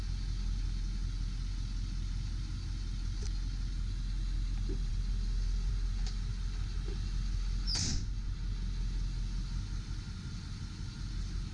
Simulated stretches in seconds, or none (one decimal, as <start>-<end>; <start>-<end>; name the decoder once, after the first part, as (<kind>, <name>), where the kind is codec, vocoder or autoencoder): none